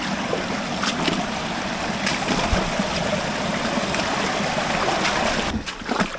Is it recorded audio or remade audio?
recorded